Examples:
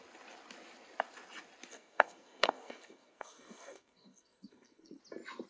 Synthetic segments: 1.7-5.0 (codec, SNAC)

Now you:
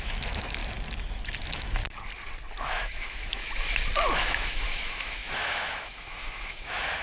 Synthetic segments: 0.0-0.6 (autoencoder, DAC-VAE); 1.4-1.8; 2.6-3.4; 4.1-7.0

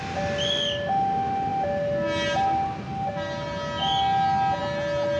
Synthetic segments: none

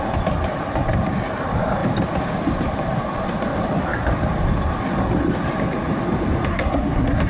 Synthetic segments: 6.5-7.3 (codec, SNAC)

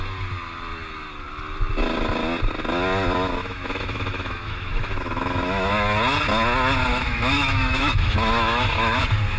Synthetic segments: 3.4-5.7 (autoencoder, DAC-VAE); 6.9-9.0